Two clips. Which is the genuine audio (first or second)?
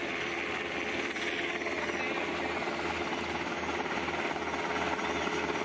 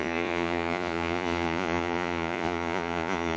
first